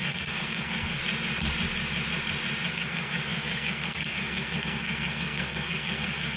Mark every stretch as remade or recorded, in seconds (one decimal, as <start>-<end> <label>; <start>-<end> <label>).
0.0-1.0 remade; 1.0-2.7 recorded; 2.7-6.4 remade